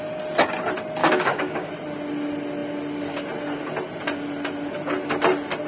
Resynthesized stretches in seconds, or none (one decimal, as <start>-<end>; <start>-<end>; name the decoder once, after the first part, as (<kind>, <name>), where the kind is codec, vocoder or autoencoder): 1.0-1.7 (codec, DAC)